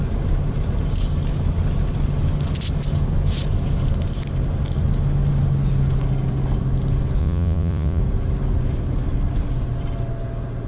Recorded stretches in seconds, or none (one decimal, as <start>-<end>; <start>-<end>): 0.0-7.2; 8.0-10.7